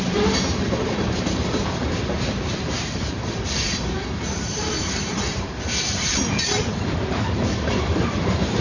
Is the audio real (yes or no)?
no